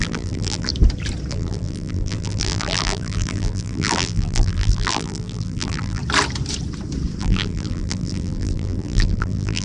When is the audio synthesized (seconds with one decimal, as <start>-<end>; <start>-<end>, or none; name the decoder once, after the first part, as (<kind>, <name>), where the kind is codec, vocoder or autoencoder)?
0.0-0.7 (vocoder, BigVGAN v2); 1.3-6.0; 7.2-9.6